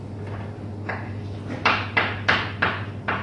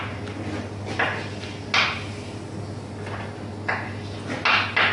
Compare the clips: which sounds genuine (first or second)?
second